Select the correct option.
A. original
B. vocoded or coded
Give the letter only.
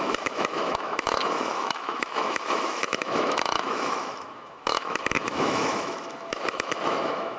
B